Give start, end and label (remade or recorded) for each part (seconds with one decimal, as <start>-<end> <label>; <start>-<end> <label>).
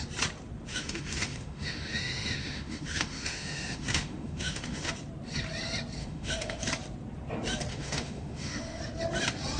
0.0-0.7 recorded; 0.7-4.9 remade; 4.9-6.0 recorded; 6.0-6.6 remade; 6.6-7.7 recorded; 7.7-8.8 remade; 8.8-9.6 recorded